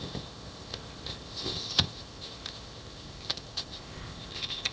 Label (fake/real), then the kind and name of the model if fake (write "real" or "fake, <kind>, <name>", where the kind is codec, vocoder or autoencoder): fake, codec, ZipCodec